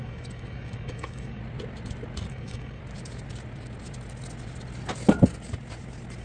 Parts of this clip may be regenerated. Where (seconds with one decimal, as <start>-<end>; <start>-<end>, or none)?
0.0-1.4; 2.3-2.8